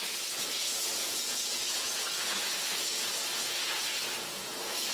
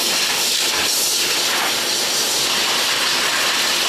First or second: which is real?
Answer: second